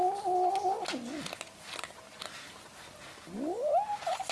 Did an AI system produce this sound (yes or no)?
no